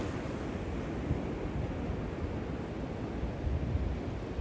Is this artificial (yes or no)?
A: no